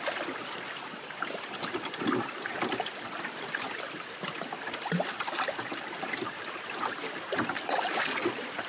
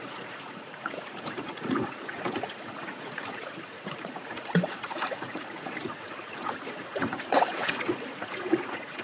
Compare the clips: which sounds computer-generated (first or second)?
second